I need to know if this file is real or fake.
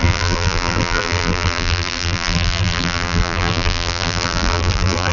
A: fake